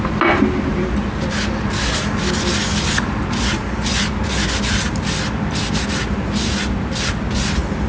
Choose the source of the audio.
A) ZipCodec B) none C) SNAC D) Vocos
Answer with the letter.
B